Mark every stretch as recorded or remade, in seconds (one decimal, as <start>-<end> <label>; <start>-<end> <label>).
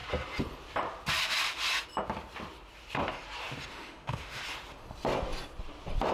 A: 0.0-3.7 recorded; 3.7-4.4 remade; 4.4-6.1 recorded